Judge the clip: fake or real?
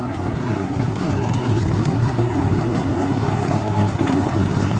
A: fake